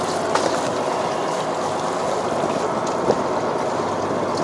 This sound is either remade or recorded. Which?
recorded